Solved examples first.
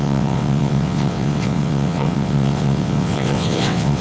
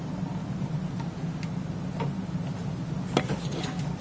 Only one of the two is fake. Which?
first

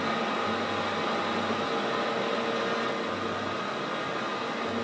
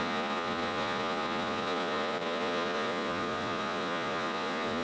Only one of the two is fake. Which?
second